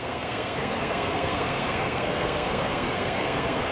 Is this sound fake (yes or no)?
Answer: yes